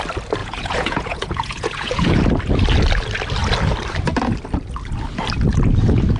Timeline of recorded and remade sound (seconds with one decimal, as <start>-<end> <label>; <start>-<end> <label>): 0.0-0.4 recorded; 0.4-2.2 remade; 2.2-6.2 recorded